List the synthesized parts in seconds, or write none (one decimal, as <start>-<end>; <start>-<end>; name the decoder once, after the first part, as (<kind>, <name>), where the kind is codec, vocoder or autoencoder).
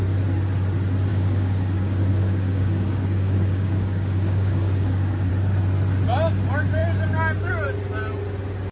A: 1.1-5.3 (codec, DAC)